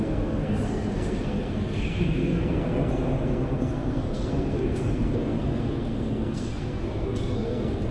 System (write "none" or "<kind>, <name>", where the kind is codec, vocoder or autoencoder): codec, SNAC